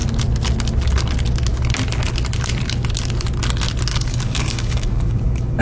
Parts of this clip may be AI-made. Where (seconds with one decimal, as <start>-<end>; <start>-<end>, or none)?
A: 3.9-5.6